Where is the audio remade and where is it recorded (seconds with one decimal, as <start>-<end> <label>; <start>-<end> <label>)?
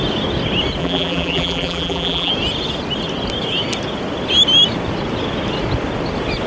0.0-0.8 recorded; 0.8-2.3 remade; 2.3-6.5 recorded